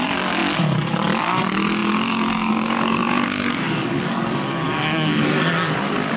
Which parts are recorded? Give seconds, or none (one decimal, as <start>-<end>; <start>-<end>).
none